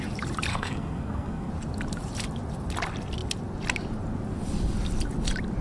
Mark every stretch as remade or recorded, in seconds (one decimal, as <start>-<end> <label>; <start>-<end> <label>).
0.0-0.5 recorded; 0.5-1.5 remade; 1.5-5.6 recorded